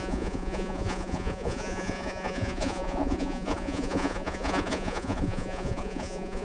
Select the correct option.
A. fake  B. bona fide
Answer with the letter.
A